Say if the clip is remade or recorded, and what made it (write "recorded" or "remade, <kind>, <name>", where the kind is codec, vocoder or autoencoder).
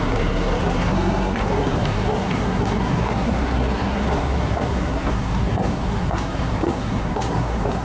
remade, codec, SNAC